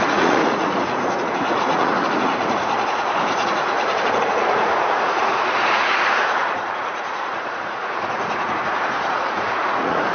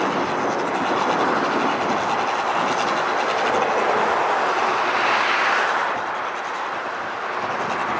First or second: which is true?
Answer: second